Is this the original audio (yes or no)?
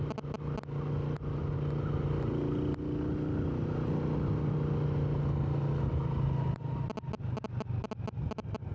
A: yes